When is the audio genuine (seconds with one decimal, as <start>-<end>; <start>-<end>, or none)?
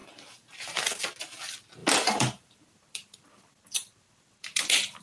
0.8-1.8